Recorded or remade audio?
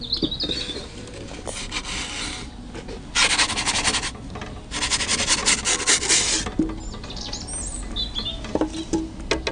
recorded